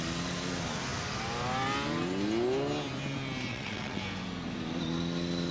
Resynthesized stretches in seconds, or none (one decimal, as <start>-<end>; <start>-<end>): 3.5-4.0